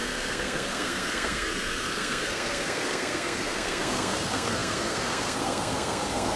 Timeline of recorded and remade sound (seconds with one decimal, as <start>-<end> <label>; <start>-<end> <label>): 0.0-6.4 remade